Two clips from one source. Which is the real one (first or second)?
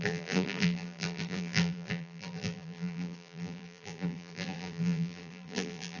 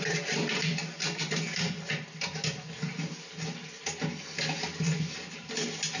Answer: second